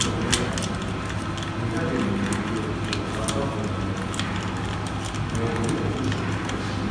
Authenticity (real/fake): real